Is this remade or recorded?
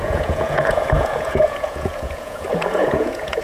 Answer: remade